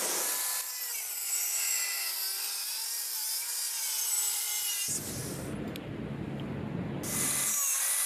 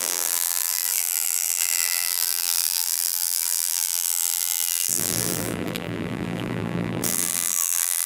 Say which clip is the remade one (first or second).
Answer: second